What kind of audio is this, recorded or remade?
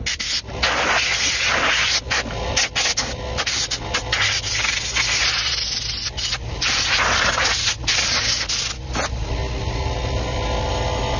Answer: recorded